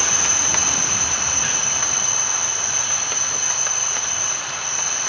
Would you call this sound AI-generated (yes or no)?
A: no